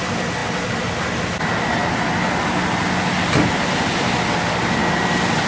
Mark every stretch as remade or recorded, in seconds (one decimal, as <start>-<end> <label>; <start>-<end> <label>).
0.0-5.5 recorded